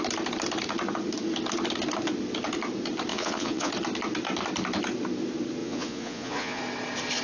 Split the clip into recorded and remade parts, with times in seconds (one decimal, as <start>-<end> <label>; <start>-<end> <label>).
0.0-3.1 recorded; 3.1-3.7 remade; 3.7-5.6 recorded; 5.6-6.6 remade; 6.6-7.2 recorded